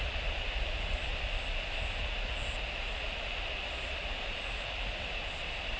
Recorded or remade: recorded